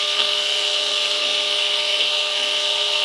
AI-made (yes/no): yes